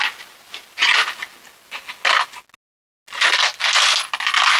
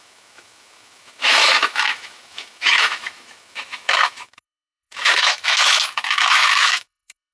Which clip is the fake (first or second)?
second